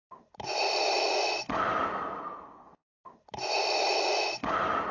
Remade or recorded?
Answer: recorded